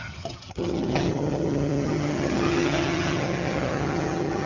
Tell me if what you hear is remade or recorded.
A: remade